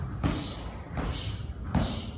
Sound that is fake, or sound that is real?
real